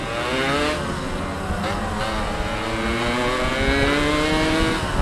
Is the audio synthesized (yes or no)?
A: no